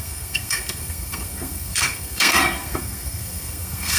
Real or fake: fake